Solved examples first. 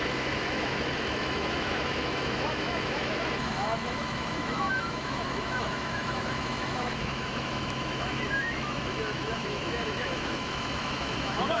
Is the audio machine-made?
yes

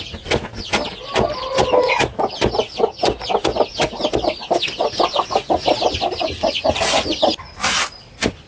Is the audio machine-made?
no